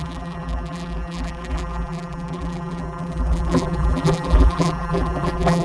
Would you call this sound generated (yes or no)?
yes